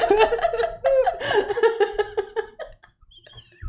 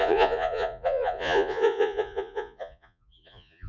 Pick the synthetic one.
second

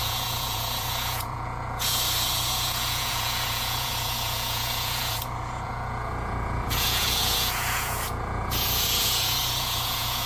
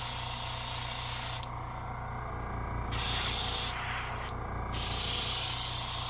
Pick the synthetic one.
first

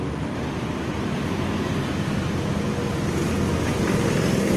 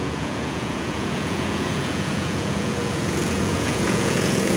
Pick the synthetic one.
second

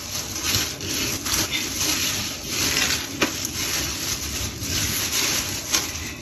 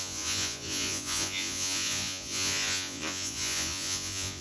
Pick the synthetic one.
second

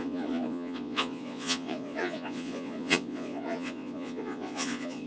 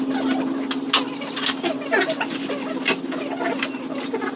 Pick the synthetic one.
first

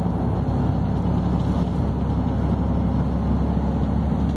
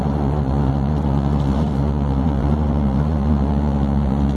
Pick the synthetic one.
second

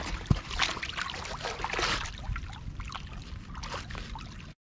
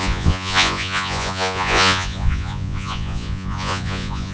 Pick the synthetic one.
second